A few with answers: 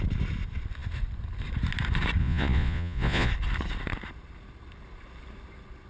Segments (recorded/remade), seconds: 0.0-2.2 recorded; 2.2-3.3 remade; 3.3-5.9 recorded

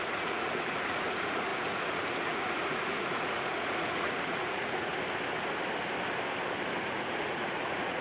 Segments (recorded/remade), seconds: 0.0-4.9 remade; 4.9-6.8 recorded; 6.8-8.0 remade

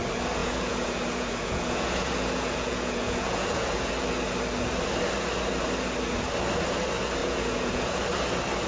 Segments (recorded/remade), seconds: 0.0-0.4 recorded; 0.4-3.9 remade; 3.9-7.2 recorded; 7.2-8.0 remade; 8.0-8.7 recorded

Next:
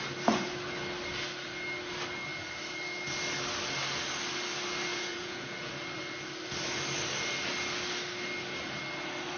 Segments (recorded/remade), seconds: 0.0-4.9 recorded; 4.9-5.7 remade; 5.7-9.4 recorded

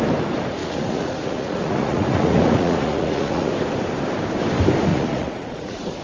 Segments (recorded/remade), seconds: 0.0-0.6 recorded; 0.6-3.5 remade; 3.5-4.9 recorded; 4.9-6.0 remade

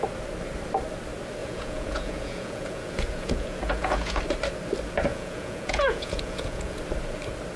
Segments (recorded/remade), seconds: 0.0-1.4 recorded; 1.4-4.2 remade; 4.2-5.1 recorded; 5.1-6.8 remade; 6.8-7.6 recorded

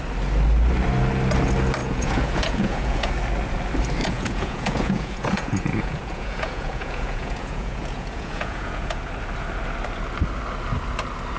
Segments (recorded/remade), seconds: 0.0-1.8 recorded; 1.8-3.1 remade; 3.1-4.0 recorded; 4.0-9.0 remade; 9.0-11.4 recorded

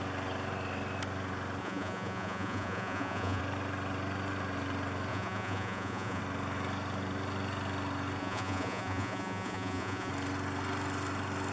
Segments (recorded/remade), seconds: 0.0-1.6 recorded; 1.6-3.4 remade; 3.4-5.1 recorded; 5.1-6.2 remade; 6.2-8.2 recorded; 8.2-10.1 remade; 10.1-11.5 recorded